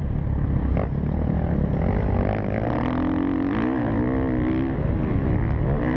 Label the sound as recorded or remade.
recorded